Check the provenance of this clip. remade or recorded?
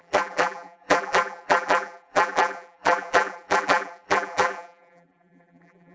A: remade